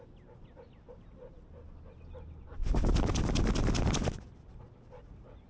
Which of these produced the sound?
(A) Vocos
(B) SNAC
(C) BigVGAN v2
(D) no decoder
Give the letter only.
D